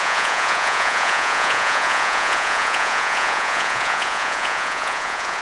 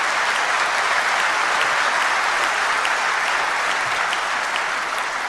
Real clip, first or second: second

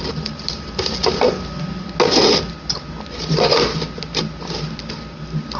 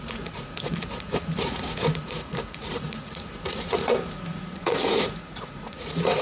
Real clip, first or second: first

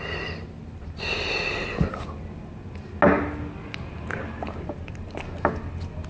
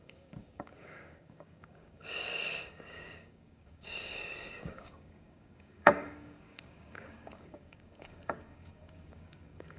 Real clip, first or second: first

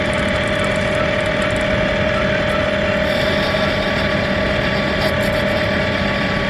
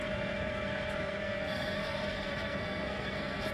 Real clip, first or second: first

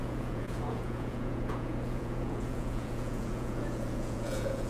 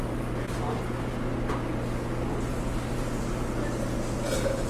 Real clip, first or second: second